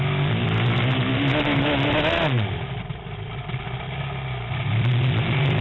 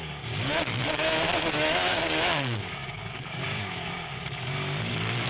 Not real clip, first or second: second